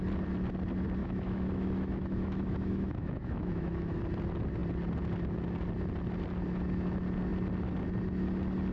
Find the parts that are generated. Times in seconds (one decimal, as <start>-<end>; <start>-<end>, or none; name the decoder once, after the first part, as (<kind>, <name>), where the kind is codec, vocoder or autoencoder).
1.0-4.0 (autoencoder, DAC-VAE)